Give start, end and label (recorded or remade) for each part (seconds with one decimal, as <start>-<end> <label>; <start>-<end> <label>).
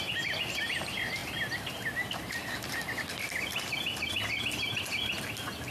0.0-5.7 recorded